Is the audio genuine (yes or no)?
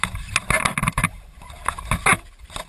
yes